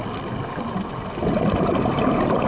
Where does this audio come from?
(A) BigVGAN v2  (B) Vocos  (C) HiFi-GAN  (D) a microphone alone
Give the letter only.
D